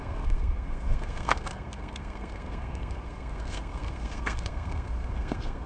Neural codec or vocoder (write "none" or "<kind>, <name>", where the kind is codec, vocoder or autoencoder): codec, SNAC